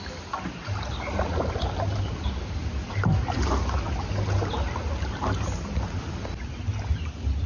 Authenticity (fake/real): real